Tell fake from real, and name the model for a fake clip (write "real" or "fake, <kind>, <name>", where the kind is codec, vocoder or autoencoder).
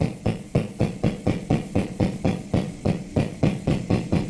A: fake, vocoder, Vocos